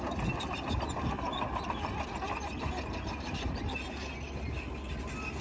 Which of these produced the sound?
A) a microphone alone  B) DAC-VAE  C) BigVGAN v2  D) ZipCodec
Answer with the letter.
A